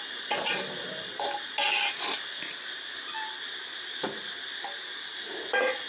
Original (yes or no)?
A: yes